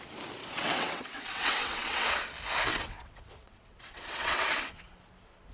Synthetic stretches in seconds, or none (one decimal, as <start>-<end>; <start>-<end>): 0.4-2.1; 2.7-4.9